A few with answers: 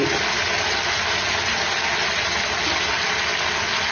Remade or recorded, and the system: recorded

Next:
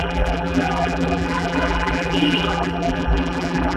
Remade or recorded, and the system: remade, vocoder, BigVGAN v2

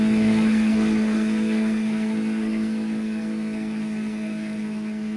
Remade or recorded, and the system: remade, codec, SNAC